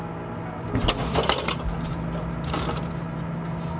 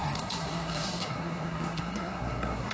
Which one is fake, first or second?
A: second